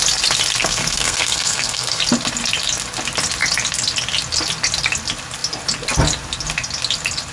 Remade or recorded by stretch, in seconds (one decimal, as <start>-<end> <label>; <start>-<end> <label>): 0.0-0.6 recorded; 0.6-2.0 remade; 2.0-7.3 recorded